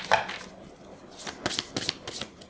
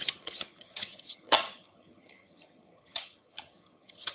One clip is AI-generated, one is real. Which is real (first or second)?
first